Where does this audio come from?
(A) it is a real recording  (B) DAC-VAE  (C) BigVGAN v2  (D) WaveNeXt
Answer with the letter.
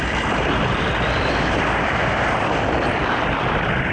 C